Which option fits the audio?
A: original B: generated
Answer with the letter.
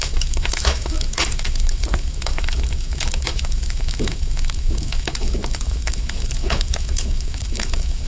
B